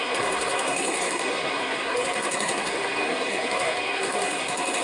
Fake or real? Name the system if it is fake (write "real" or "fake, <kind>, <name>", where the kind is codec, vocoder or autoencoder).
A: fake, codec, SNAC